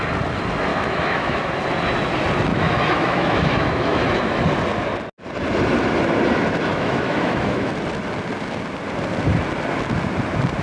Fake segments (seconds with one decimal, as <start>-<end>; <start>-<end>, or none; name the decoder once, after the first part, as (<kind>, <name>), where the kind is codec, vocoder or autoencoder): 0.7-1.5 (autoencoder, DAC-VAE); 2.5-4.4; 6.7-7.7

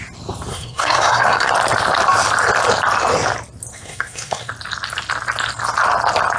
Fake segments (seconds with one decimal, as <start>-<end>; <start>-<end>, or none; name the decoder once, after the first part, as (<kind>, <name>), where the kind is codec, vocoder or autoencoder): 0.5-1.5 (codec, SNAC); 3.7-4.5